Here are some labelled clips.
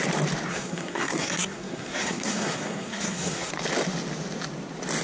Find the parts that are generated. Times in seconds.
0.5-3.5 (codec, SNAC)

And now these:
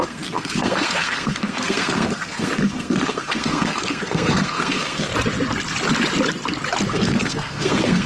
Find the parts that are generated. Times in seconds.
0.0-5.1 (codec, SNAC); 6.9-8.1

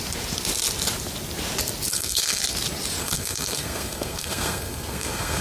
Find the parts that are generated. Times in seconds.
1.9-2.4 (codec, SNAC); 3.0-5.4

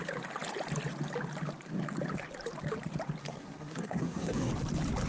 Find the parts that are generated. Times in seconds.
3.2-4.5 (codec, SNAC)

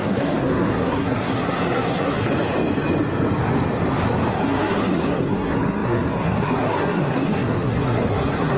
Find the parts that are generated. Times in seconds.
0.0-2.3 (codec, SNAC); 4.3-8.6